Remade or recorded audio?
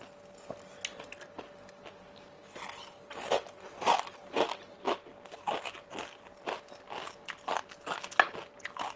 recorded